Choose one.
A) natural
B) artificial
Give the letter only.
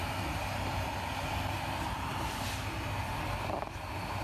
A